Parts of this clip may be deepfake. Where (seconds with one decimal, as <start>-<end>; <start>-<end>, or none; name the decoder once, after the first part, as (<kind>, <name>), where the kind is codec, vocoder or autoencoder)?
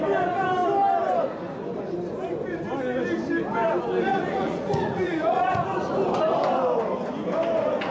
4.1-5.9 (vocoder, Vocos)